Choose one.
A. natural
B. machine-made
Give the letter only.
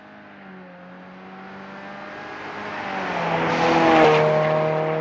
A